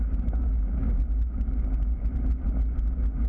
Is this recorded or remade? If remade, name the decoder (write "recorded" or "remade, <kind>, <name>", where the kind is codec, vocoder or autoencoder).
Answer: recorded